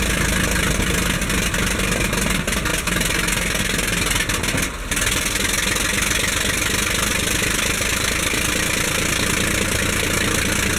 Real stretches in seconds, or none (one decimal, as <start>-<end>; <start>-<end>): 0.0-7.1; 8.6-10.8